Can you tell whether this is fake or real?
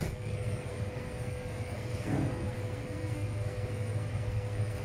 fake